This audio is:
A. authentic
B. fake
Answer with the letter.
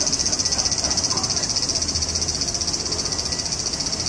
A